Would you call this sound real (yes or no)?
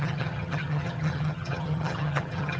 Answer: no